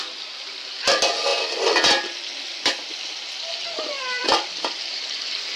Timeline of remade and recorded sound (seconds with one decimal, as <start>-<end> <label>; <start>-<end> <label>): 0.0-1.3 remade; 1.3-4.0 recorded; 4.0-5.6 remade